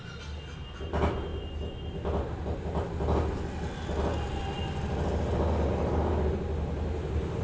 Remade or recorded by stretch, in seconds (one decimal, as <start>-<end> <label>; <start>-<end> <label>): 0.0-7.4 recorded